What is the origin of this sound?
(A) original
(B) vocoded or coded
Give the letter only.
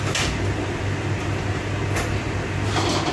A